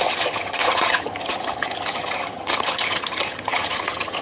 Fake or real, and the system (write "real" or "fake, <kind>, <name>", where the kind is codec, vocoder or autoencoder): fake, vocoder, HiFi-GAN